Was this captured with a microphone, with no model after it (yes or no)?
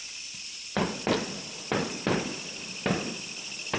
yes